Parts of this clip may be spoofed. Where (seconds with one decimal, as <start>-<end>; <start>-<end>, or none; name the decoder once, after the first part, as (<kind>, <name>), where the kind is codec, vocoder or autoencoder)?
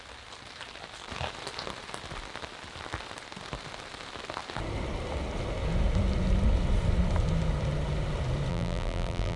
8.5-9.4 (vocoder, BigVGAN v2)